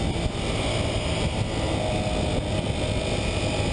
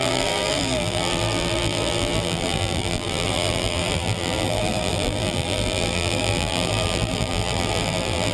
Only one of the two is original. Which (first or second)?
first